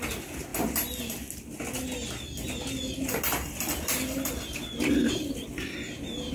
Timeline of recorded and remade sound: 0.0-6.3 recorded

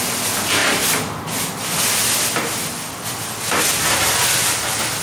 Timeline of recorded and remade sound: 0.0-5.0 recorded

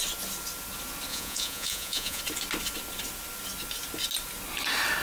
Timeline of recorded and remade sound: 0.0-1.1 recorded; 1.1-2.2 remade; 2.2-5.0 recorded